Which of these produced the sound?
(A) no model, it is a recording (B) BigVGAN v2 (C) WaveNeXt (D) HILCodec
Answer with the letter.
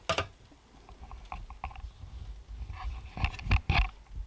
A